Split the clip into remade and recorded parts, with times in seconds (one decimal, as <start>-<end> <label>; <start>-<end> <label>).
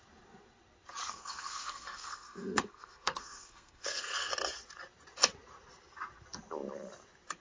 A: 0.0-1.0 recorded; 1.0-4.3 remade; 4.3-7.4 recorded